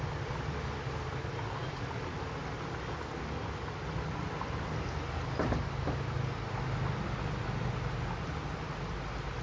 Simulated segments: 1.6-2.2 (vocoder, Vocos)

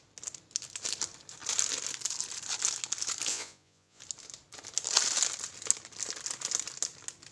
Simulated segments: 3.3-4.0 (vocoder, Vocos)

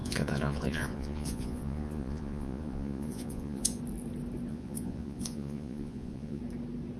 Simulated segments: 0.0-3.8 (vocoder, Vocos); 4.5-6.4

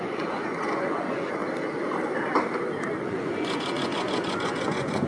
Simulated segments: 0.0-1.4 (vocoder, Vocos); 3.0-5.1